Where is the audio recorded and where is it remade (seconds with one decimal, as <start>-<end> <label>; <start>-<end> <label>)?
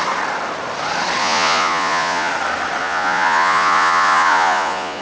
0.0-1.2 recorded; 1.2-2.3 remade; 2.3-2.8 recorded; 2.8-5.0 remade